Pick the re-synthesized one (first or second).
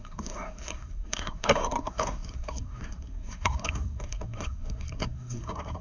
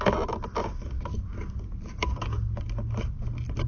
first